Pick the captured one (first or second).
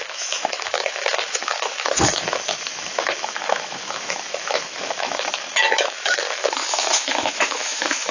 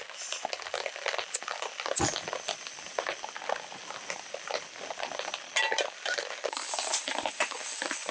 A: second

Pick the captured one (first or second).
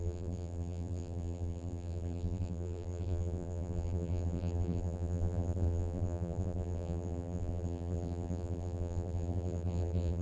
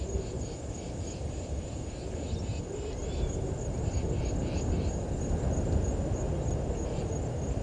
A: second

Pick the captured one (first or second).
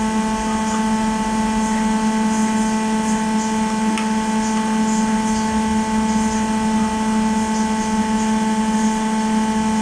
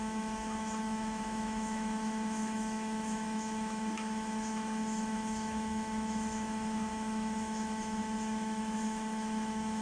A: first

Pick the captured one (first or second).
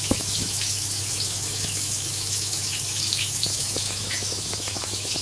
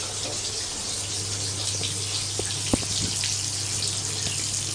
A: second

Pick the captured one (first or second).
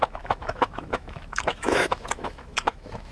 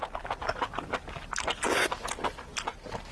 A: second